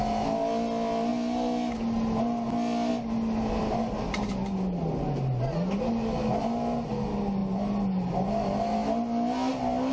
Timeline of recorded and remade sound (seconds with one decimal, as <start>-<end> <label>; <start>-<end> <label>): 0.0-9.9 recorded